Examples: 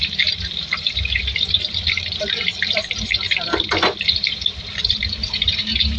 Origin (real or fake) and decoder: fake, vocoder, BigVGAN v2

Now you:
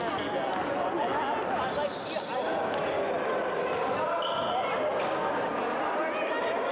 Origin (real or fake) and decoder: real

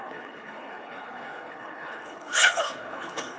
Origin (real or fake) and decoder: fake, codec, HILCodec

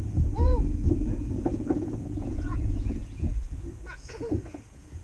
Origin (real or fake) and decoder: fake, vocoder, Vocos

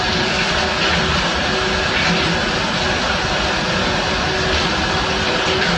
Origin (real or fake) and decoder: real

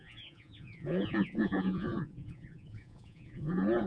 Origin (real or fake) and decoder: fake, vocoder, Vocos